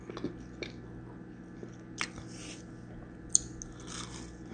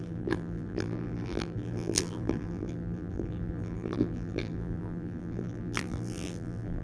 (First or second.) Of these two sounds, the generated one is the second